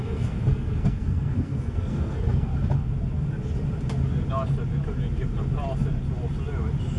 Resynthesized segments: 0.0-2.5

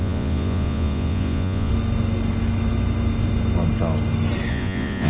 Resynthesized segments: 0.0-1.7; 4.5-5.1

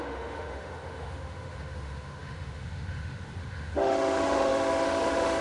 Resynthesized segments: 0.0-5.4

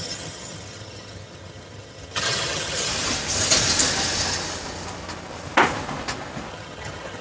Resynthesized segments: 0.0-2.9; 6.5-7.2